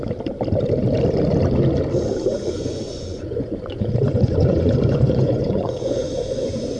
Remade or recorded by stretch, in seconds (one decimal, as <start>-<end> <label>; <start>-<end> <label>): 0.0-2.3 recorded; 2.3-6.8 remade